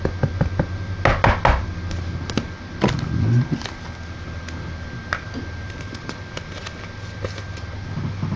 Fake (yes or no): no